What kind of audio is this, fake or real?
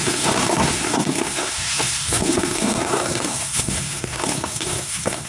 fake